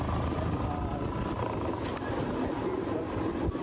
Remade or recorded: recorded